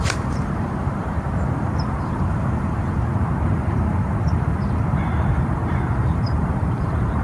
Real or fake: fake